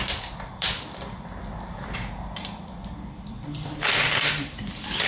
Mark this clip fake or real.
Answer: fake